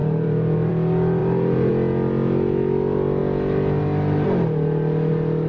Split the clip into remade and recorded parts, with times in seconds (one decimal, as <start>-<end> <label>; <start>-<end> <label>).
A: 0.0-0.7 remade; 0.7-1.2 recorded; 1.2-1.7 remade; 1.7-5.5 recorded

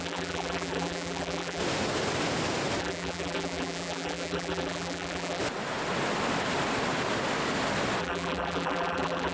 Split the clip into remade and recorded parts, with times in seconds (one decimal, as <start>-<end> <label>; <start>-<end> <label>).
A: 0.0-1.6 remade; 1.6-2.8 recorded; 2.8-5.4 remade; 5.4-8.0 recorded; 8.0-9.3 remade

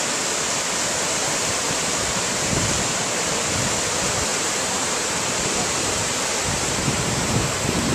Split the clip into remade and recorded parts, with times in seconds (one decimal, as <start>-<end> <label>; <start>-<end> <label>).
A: 0.0-1.2 recorded; 1.2-3.2 remade; 3.2-4.3 recorded; 4.3-7.9 remade

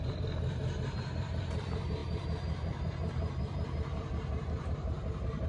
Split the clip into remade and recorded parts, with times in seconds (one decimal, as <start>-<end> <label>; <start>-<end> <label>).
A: 0.0-5.5 remade

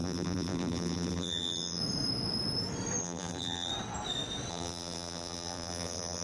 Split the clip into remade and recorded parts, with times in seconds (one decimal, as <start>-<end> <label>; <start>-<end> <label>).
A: 0.0-1.8 remade; 1.8-3.0 recorded; 3.0-3.7 remade; 3.7-4.5 recorded; 4.5-6.2 remade

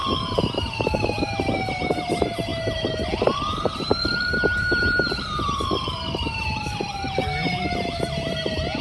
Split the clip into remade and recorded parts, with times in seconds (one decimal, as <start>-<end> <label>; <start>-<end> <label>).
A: 0.0-1.7 recorded; 1.7-2.5 remade; 2.5-3.3 recorded; 3.3-8.8 remade

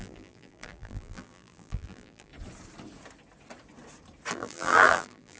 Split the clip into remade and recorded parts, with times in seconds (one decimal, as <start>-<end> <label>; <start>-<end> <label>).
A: 0.0-2.3 remade; 2.3-4.3 recorded; 4.3-5.4 remade